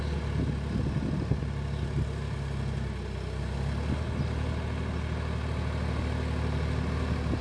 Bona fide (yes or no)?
yes